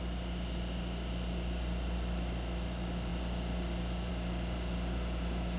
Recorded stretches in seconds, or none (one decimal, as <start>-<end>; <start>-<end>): 0.0-5.6